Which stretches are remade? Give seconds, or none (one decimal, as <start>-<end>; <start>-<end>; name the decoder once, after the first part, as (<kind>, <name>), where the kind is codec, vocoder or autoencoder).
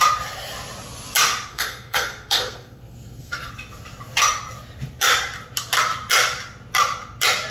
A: 1.5-3.5 (codec, SNAC)